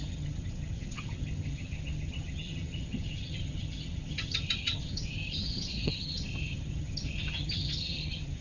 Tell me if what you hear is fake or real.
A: fake